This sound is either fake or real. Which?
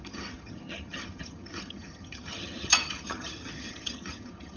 fake